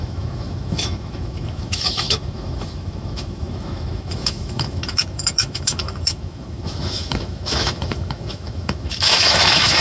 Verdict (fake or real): fake